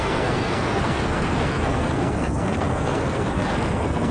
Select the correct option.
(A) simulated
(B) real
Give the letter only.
A